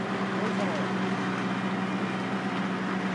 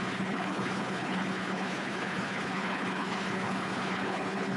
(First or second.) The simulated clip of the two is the second